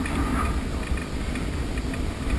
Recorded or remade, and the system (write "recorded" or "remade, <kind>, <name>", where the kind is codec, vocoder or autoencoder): recorded